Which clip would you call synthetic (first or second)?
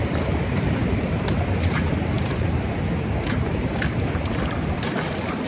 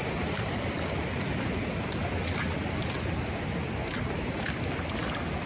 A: first